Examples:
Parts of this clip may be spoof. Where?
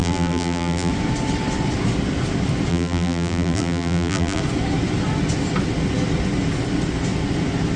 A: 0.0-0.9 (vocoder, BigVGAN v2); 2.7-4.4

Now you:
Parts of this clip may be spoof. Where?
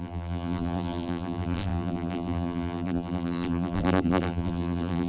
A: 0.0-5.1 (vocoder, BigVGAN v2)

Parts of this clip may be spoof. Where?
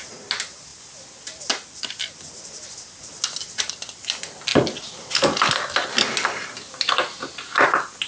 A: 4.5-5.7 (vocoder, BigVGAN v2)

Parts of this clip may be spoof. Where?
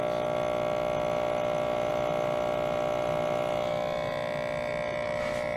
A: none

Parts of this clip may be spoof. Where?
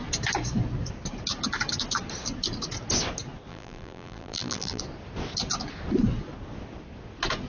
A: 3.5-4.8 (vocoder, BigVGAN v2)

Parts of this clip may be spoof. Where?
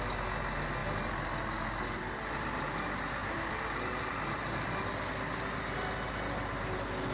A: 3.2-4.8 (vocoder, BigVGAN v2)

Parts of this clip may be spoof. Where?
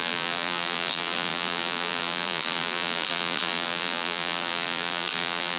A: 0.0-5.6 (vocoder, BigVGAN v2)